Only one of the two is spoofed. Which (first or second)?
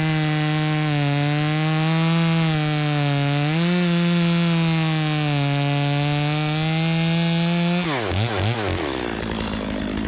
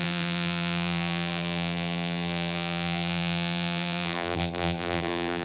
second